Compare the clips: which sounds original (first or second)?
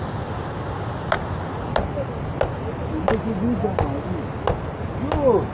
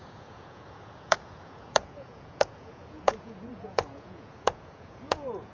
first